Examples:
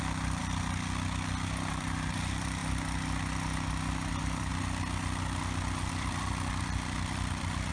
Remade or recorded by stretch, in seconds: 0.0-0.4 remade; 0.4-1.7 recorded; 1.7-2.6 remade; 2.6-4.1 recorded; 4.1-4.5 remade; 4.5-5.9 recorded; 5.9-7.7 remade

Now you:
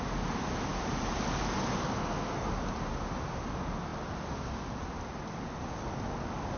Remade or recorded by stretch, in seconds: 0.0-2.0 recorded; 2.0-2.5 remade; 2.5-6.6 recorded